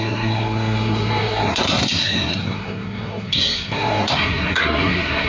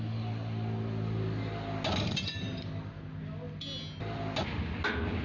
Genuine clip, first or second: second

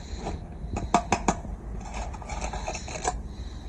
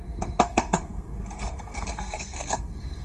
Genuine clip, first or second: first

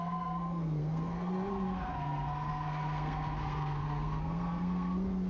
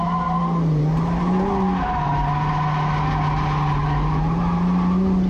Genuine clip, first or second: second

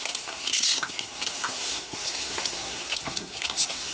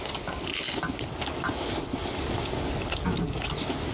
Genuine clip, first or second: second